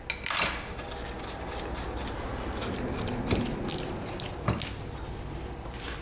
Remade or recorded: recorded